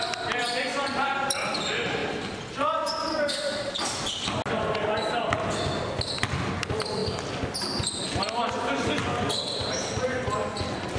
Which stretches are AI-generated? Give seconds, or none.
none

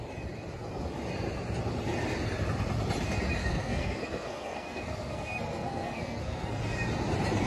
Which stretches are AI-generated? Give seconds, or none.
3.4-6.6 (codec, SNAC)

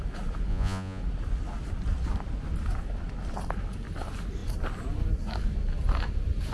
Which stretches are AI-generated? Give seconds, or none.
0.5-1.0 (vocoder, Vocos)

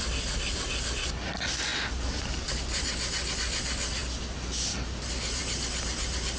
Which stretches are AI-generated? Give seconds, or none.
none

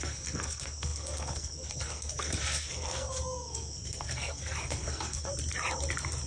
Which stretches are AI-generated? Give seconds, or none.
0.0-5.3 (codec, SNAC)

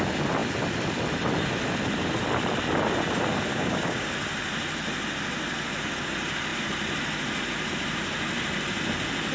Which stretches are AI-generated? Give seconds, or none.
3.5-4.1 (codec, DAC)

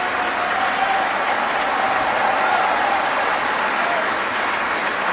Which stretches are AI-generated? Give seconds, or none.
3.8-4.3 (autoencoder, DAC-VAE)